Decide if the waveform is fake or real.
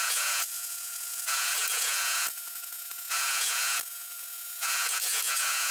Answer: fake